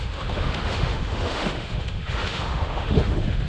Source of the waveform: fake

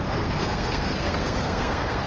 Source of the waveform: fake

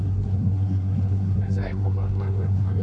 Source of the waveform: fake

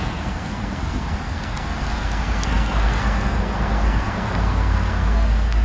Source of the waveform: fake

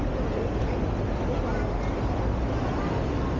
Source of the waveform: real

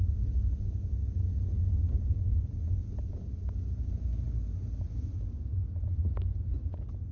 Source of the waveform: real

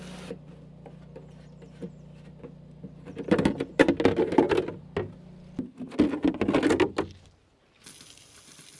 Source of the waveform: real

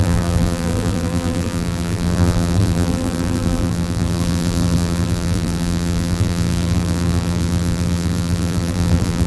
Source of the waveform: fake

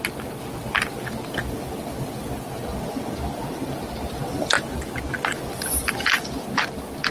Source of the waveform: real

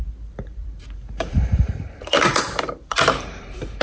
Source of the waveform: fake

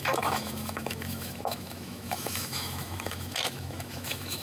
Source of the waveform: fake